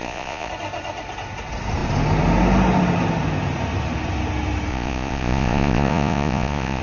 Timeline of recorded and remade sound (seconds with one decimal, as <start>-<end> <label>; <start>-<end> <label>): 0.0-0.5 remade; 0.5-4.7 recorded; 4.7-6.8 remade